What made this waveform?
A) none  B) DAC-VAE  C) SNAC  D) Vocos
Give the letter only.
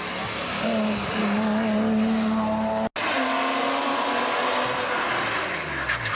A